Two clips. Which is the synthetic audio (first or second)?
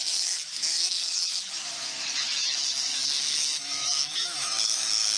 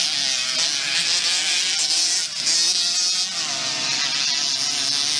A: first